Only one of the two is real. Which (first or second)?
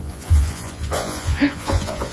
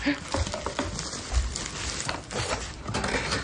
second